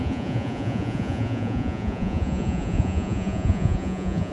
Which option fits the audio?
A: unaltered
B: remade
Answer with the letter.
B